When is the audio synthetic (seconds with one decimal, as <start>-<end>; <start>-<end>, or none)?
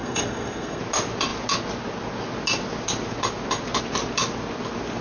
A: 0.0-0.8